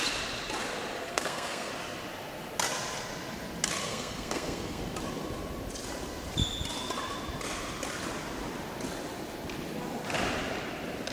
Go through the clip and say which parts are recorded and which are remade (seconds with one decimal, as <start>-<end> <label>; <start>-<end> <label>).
0.0-1.0 recorded; 1.0-1.7 remade; 1.7-3.9 recorded; 3.9-4.8 remade; 4.8-11.1 recorded